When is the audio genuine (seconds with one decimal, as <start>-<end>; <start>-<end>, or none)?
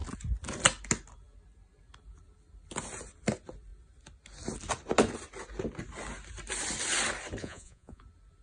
0.0-7.4; 8.0-8.4